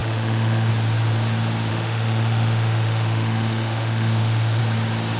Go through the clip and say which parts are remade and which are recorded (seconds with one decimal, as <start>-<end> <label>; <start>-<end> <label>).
0.0-0.7 remade; 0.7-1.7 recorded; 1.7-4.6 remade; 4.6-5.2 recorded